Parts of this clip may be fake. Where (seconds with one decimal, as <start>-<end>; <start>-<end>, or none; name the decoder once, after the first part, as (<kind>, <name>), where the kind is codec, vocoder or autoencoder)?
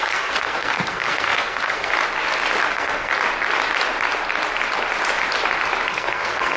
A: 0.0-1.9 (codec, SNAC); 2.7-3.1; 5.9-6.6